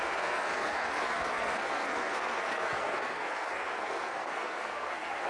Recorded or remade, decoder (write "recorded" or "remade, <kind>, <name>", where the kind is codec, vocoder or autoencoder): remade, codec, SNAC